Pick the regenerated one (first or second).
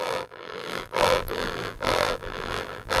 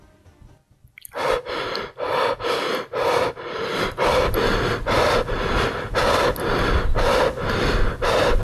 first